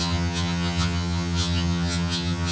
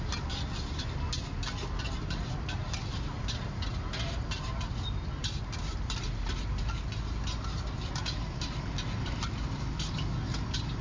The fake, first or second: first